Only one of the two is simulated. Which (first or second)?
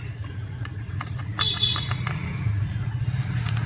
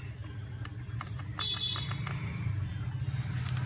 first